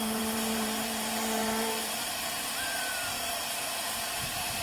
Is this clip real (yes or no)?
no